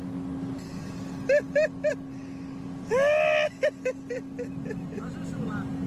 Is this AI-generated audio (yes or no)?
no